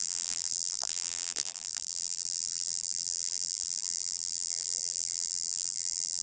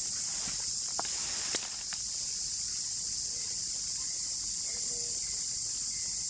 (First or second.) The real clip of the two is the second